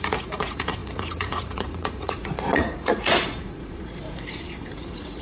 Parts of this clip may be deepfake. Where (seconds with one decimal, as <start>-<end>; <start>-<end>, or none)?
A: 0.0-5.2